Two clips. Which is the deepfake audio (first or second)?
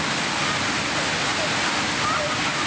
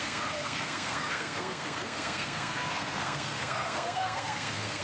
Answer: second